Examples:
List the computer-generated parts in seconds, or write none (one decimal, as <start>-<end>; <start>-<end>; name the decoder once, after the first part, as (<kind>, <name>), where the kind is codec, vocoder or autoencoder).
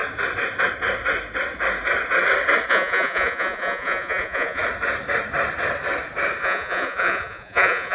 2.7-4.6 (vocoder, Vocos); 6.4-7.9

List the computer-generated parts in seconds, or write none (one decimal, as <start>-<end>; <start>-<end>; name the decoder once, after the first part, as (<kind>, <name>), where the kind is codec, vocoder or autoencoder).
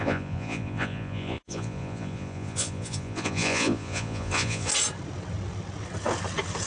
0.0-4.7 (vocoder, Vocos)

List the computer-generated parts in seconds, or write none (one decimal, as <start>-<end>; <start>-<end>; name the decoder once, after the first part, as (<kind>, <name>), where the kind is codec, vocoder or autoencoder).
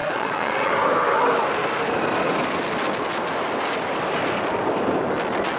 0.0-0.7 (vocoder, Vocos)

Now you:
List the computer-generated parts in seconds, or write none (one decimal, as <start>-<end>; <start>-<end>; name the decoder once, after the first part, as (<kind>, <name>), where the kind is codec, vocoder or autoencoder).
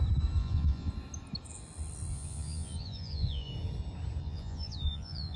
0.4-0.9 (vocoder, Vocos); 2.1-3.5; 4.2-5.4